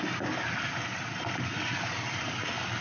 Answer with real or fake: real